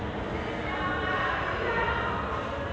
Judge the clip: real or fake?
real